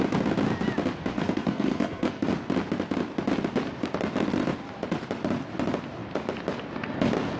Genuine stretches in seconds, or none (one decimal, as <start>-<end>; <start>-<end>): 0.0-1.1; 2.3-7.4